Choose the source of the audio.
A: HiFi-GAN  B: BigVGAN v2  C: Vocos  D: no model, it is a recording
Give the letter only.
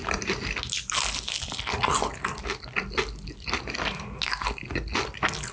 D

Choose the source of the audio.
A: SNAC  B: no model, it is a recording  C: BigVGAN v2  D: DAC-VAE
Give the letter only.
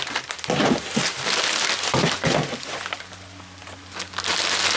B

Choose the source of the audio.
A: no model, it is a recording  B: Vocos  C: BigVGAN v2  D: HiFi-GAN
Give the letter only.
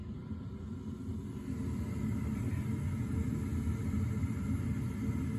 A